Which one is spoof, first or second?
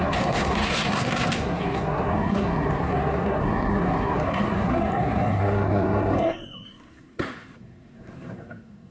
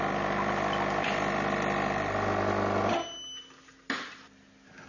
first